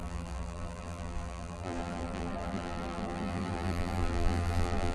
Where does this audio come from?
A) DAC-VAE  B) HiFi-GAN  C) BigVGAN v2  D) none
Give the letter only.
C